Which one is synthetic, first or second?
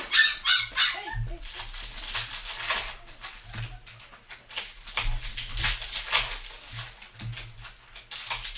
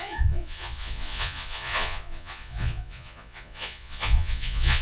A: second